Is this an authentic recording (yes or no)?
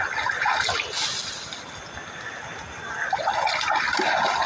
yes